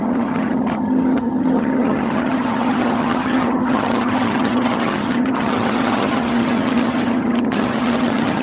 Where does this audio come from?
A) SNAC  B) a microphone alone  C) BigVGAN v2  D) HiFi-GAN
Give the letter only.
D